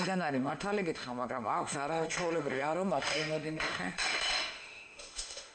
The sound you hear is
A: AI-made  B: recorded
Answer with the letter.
A